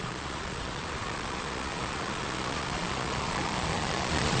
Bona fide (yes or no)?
no